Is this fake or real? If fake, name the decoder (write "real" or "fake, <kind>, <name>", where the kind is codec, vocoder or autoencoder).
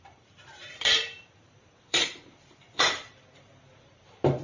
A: fake, vocoder, BigVGAN v2